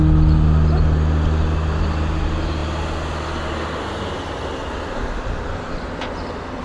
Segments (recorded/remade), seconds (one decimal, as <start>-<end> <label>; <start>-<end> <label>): 0.0-6.6 recorded